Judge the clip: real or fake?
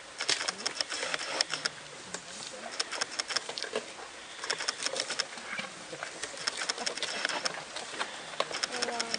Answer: real